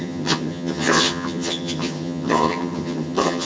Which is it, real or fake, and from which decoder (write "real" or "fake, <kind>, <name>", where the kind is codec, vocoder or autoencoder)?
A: fake, vocoder, HiFi-GAN